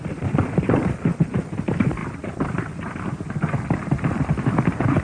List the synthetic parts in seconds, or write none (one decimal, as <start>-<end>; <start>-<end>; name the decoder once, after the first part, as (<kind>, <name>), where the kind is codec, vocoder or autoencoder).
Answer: none